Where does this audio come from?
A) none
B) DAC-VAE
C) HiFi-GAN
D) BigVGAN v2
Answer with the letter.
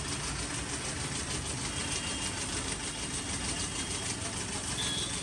A